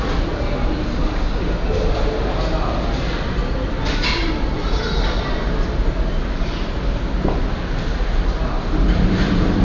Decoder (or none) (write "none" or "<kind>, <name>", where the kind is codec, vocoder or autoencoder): none